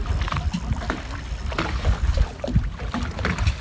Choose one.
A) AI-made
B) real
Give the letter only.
B